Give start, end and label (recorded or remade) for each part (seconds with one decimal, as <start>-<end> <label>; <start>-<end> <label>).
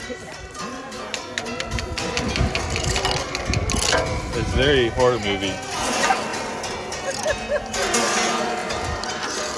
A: 0.0-8.6 recorded; 8.6-9.6 remade